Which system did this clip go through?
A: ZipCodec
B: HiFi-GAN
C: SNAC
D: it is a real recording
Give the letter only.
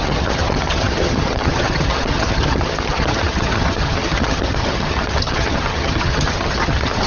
B